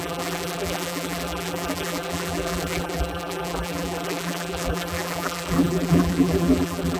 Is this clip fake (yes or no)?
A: yes